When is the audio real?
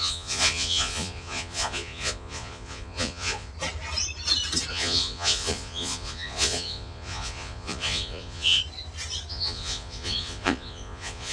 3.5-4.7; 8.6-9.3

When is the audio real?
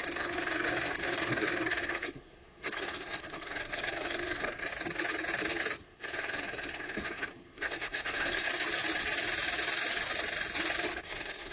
4.7-5.8; 8.5-11.0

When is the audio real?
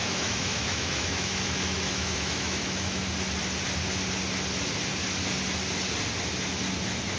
3.0-7.2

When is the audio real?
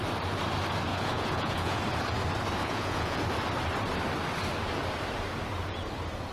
0.0-0.9; 1.8-2.6; 3.2-6.3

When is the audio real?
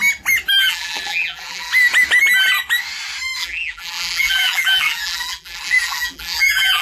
0.0-0.6; 1.7-3.4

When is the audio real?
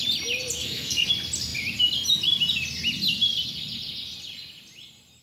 0.0-0.6; 1.1-5.2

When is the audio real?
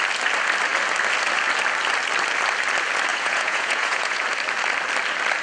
0.0-3.1; 4.2-5.4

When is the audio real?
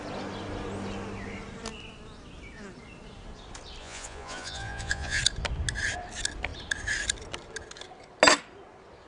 0.0-3.8; 5.2-9.1